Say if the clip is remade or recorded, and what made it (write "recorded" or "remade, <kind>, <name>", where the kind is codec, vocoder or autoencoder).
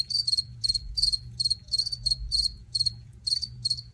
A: remade, vocoder, Vocos